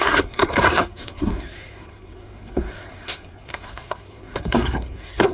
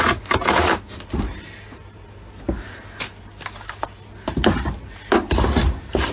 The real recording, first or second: second